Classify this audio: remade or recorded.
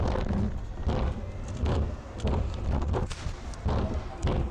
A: recorded